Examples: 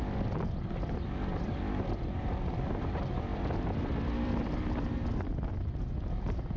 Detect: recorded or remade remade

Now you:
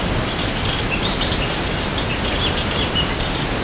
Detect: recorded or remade remade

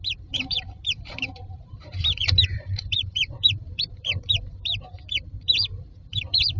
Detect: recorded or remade remade